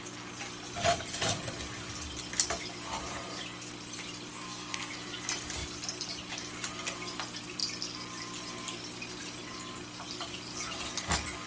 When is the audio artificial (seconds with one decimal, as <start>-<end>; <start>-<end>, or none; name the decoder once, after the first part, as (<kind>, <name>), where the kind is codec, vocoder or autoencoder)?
4.3-4.9 (codec, SNAC)